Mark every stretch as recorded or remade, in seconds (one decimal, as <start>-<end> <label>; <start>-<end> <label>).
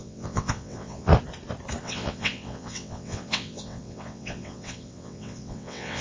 0.0-1.1 remade; 1.1-1.8 recorded; 1.8-6.0 remade